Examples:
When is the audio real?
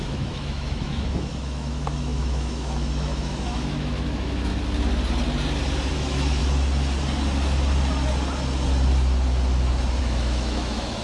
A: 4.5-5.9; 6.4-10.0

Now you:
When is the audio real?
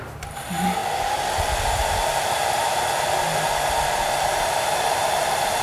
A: 0.8-4.2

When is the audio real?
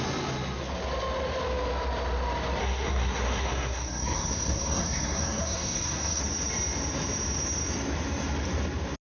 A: 0.0-2.6; 6.2-9.0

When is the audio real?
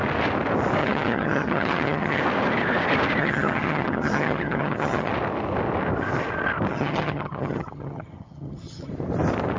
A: 0.0-0.8; 2.2-3.2; 5.1-6.7; 8.9-9.6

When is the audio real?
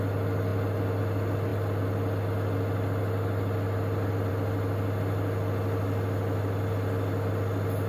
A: 0.0-7.9